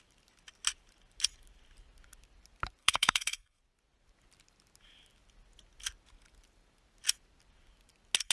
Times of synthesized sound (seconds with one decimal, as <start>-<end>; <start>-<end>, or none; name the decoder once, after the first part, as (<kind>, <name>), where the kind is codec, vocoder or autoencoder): 2.8-3.6 (codec, SNAC)